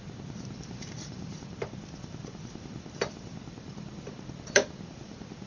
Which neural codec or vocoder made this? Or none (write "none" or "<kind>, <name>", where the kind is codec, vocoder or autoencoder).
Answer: vocoder, BigVGAN v2